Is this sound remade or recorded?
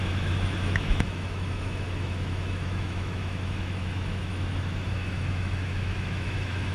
remade